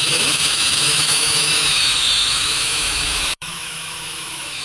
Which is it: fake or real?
fake